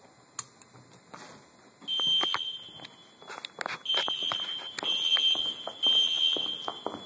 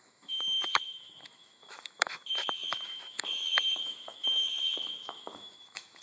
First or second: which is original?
first